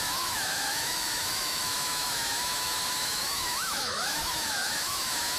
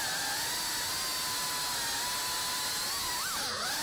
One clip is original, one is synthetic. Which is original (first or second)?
second